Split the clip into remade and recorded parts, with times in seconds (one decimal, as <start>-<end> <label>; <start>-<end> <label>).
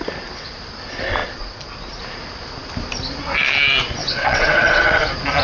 0.0-4.0 recorded; 4.0-5.0 remade; 5.0-5.4 recorded